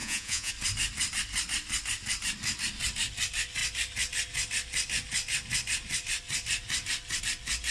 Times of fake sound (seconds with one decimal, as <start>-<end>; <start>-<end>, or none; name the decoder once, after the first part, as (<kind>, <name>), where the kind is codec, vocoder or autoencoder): 0.0-0.5 (vocoder, Vocos)